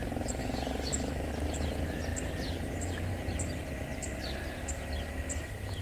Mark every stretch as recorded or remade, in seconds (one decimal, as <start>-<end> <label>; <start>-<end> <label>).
0.0-0.4 recorded; 0.4-1.3 remade; 1.3-5.8 recorded